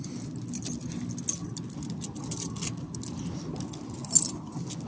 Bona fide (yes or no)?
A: yes